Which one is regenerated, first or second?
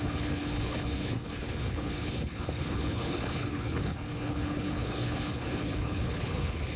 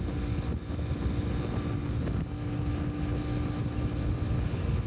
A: first